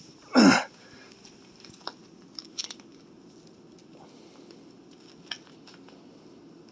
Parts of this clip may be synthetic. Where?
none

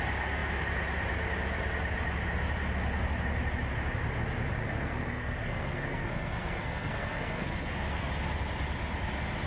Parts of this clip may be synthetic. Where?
4.6-8.1 (codec, SNAC)

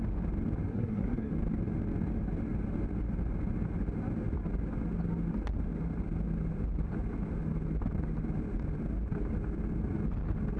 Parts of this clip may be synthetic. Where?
0.7-1.3 (codec, SNAC)

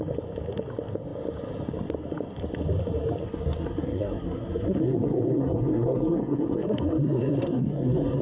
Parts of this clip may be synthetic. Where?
3.2-8.2 (codec, SNAC)